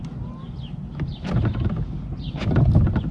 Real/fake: real